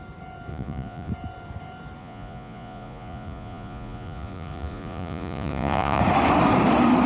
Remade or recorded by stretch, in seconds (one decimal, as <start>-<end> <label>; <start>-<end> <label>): 0.0-0.5 recorded; 0.5-1.1 remade; 1.1-2.0 recorded; 2.0-6.0 remade; 6.0-7.1 recorded